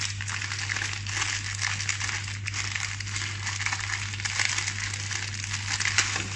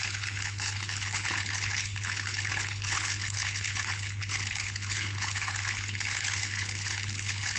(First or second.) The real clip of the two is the first